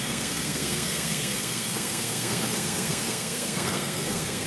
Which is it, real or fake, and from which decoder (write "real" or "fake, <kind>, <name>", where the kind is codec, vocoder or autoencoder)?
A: fake, codec, SNAC